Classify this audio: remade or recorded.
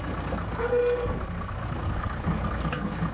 remade